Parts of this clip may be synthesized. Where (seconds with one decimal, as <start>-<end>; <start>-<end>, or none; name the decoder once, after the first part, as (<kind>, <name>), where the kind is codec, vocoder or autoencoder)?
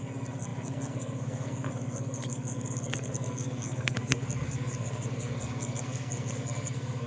0.0-7.1 (codec, SNAC)